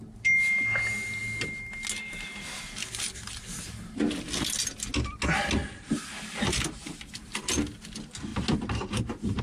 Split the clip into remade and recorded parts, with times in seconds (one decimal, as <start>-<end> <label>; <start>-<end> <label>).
0.0-9.4 recorded